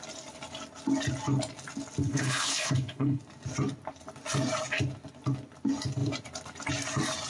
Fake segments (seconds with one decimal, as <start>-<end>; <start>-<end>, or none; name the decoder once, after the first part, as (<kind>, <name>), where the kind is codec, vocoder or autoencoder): 2.0-3.2 (codec, HILCodec)